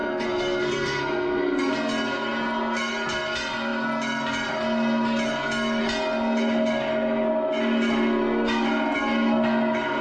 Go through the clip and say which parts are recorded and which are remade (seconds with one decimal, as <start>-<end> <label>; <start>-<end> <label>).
0.0-1.7 remade; 1.7-10.0 recorded